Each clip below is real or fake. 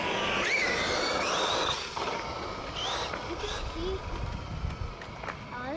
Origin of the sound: real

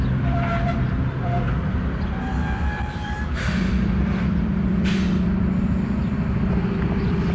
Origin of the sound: fake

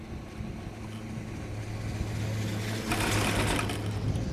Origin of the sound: real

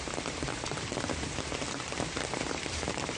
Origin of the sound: fake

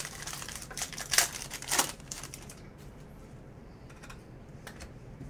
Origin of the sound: fake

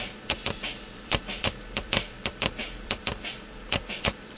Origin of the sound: fake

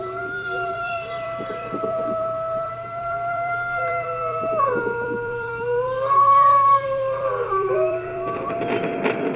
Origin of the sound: fake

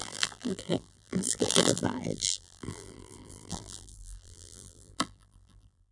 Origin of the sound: fake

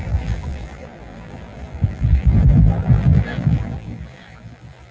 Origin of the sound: fake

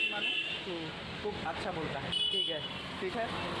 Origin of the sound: real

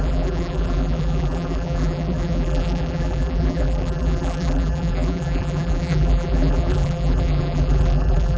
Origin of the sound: fake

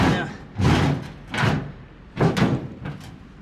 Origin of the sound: real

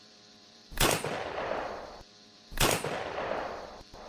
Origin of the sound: fake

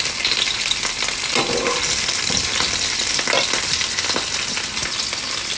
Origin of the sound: real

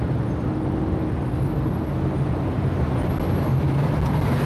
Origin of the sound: real